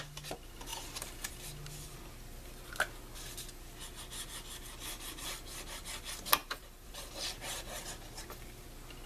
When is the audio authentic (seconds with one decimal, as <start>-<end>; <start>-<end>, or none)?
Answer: 0.0-6.4; 7.1-9.1

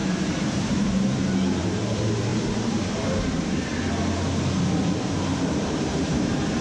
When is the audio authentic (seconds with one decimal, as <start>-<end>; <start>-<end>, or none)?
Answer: 3.7-5.0

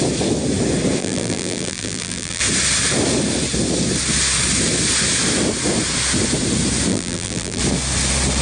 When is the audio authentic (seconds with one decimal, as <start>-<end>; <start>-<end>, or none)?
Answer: 0.0-1.0; 2.4-6.9; 7.6-8.4

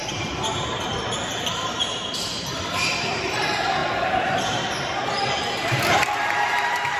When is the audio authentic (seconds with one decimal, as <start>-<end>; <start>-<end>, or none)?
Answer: 3.8-4.8

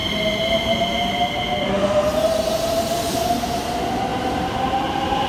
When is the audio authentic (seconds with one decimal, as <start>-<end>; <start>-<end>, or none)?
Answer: 1.6-2.1; 3.3-4.1

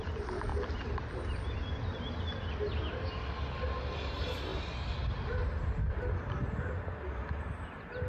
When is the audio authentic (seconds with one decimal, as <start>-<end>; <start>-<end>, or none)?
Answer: 0.0-8.1

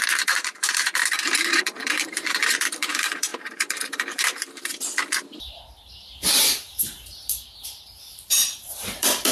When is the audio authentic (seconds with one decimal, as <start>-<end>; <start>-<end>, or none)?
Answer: 4.7-5.8

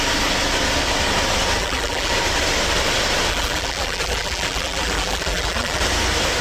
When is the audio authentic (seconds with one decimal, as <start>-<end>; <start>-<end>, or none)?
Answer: 0.0-1.6; 2.1-3.3; 5.8-6.4